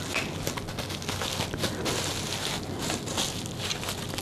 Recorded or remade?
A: recorded